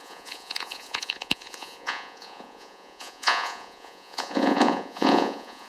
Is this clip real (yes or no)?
no